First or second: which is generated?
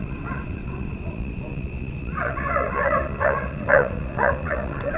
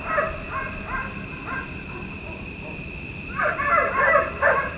first